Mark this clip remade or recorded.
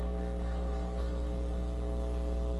remade